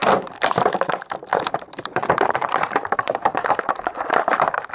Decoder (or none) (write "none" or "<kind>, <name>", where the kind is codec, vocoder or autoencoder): vocoder, BigVGAN v2